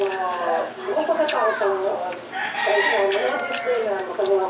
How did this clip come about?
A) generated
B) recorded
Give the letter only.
B